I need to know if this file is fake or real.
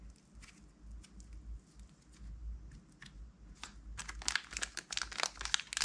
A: real